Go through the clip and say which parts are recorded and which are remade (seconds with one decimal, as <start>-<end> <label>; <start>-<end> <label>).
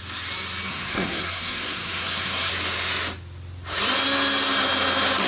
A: 0.0-0.7 recorded; 0.7-2.5 remade; 2.5-5.3 recorded